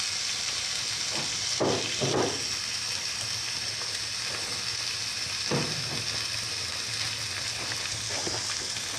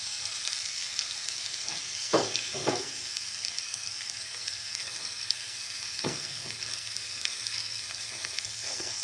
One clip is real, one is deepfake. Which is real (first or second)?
first